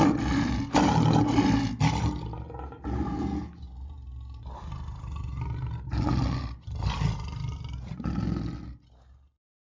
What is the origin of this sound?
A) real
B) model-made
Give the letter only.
A